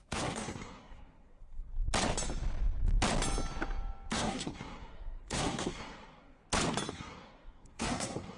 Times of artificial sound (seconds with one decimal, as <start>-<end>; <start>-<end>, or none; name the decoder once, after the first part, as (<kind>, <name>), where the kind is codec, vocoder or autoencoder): 0.0-1.7 (codec, SNAC); 4.1-6.4; 6.9-8.4